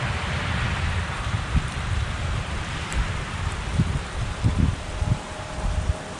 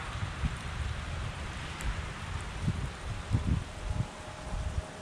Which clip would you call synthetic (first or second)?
first